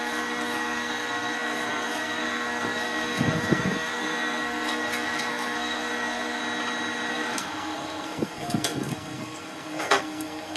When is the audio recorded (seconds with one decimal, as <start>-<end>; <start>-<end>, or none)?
6.4-7.1